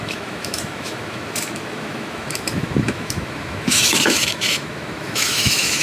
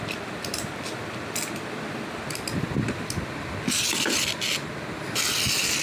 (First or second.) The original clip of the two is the second